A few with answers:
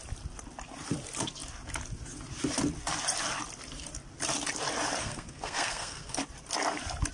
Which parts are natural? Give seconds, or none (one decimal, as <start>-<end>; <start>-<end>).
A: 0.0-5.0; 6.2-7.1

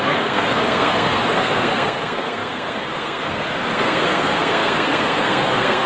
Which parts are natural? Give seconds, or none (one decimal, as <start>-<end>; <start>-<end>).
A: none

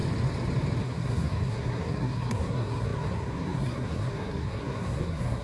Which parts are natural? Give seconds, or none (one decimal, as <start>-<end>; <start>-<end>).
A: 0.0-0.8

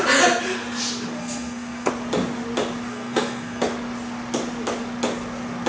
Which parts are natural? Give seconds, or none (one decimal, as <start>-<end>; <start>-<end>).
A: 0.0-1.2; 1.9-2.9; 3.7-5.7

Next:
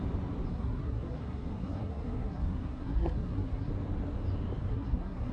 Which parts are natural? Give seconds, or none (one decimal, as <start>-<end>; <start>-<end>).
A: 0.0-0.5; 3.7-4.7